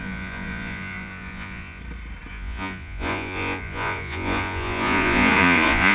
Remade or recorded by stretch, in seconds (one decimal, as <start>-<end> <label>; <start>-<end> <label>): 0.0-1.8 remade; 1.8-2.3 recorded; 2.3-5.9 remade